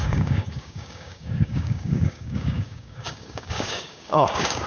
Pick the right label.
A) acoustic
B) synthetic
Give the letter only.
B